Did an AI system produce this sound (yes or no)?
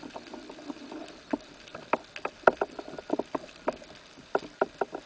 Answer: no